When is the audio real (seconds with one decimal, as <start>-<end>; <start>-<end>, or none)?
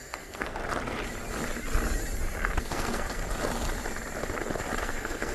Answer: 0.6-2.6; 3.2-4.8